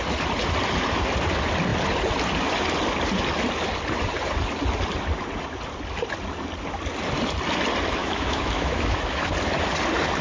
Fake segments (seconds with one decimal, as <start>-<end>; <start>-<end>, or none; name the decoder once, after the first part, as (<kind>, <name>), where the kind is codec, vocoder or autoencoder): 8.0-9.2 (autoencoder, DAC-VAE)